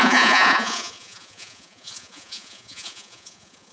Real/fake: fake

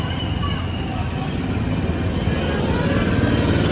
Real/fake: real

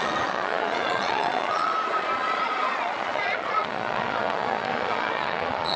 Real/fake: fake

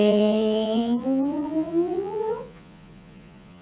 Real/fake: fake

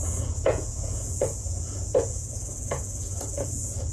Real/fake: fake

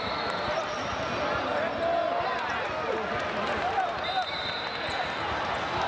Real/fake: real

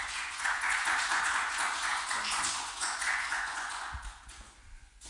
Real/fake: fake